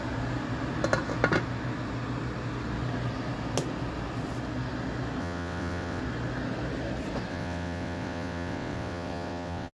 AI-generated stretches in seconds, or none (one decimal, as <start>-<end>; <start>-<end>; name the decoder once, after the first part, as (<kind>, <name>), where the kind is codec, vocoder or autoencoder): 5.2-6.0 (vocoder, WaveNeXt); 7.3-9.7